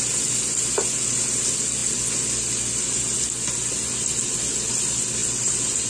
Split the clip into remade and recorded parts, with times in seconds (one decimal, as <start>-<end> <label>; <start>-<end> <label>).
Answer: 0.0-5.9 recorded